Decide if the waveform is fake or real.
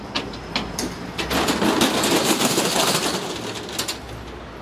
real